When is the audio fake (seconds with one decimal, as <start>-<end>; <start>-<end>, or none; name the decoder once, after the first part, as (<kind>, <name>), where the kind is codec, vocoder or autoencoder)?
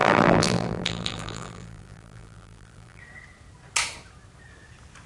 0.0-3.0 (vocoder, BigVGAN v2)